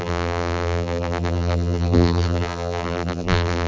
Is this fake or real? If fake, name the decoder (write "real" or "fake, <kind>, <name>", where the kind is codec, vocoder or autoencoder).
fake, vocoder, BigVGAN v2